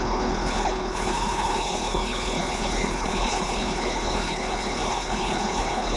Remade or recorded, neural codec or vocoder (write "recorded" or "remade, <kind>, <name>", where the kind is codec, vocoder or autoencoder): remade, codec, HILCodec